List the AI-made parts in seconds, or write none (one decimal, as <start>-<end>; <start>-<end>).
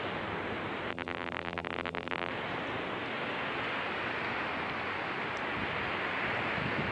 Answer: 0.9-2.3